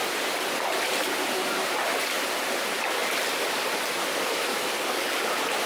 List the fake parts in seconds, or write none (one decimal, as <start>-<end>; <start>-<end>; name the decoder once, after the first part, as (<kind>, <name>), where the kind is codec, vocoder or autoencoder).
4.5-5.3 (codec, DAC)